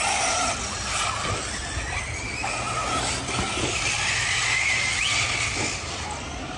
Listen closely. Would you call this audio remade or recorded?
recorded